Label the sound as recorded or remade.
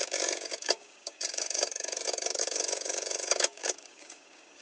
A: remade